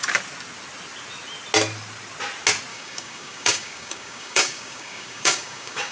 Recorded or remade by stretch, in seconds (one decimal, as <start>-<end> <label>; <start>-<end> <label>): 0.0-2.7 recorded; 2.7-5.9 remade